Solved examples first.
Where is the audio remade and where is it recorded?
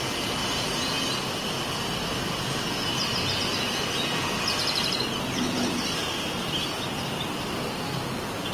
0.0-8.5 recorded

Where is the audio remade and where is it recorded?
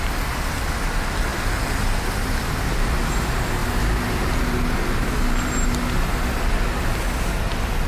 0.0-7.9 recorded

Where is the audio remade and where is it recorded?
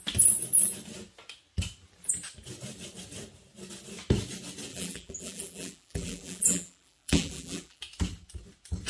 0.0-4.7 recorded; 4.7-7.8 remade; 7.8-8.9 recorded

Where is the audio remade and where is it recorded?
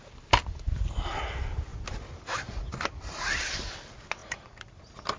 0.0-0.4 recorded; 0.4-1.2 remade; 1.2-4.2 recorded; 4.2-4.8 remade; 4.8-5.2 recorded